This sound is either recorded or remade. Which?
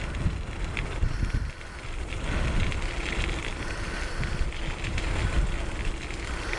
recorded